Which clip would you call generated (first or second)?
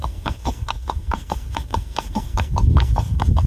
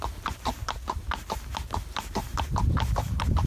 first